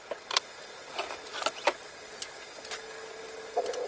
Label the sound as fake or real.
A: real